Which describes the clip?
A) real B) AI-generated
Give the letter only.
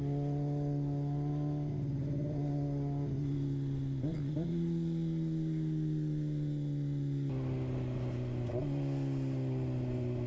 A